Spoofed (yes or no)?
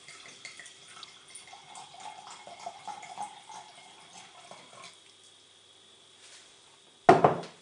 no